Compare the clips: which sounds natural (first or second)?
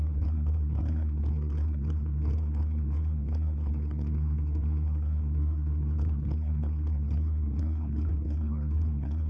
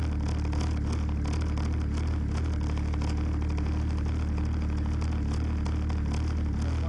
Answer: second